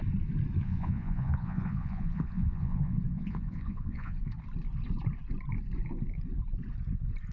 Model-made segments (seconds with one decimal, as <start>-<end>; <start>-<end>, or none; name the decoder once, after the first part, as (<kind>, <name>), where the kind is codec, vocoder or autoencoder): 0.6-4.2 (vocoder, Vocos)